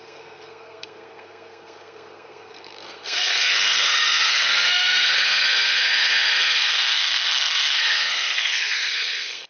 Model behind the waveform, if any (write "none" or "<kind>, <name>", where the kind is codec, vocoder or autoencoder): codec, SNAC